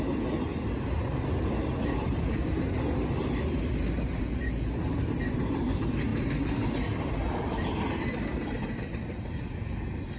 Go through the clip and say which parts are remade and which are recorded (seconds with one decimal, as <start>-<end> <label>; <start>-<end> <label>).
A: 0.0-6.1 recorded; 6.1-8.0 remade; 8.0-10.2 recorded